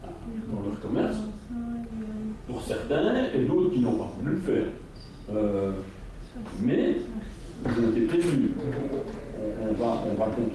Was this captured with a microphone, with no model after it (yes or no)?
yes